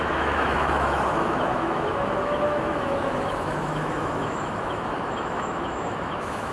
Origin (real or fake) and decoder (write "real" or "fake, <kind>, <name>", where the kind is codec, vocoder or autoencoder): fake, autoencoder, DAC-VAE